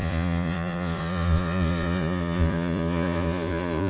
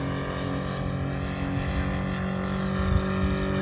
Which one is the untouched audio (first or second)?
second